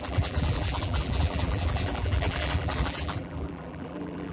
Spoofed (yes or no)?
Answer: yes